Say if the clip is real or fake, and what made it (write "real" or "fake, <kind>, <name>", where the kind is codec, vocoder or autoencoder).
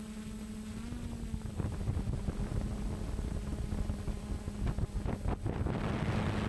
real